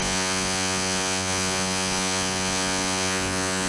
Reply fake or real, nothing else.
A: fake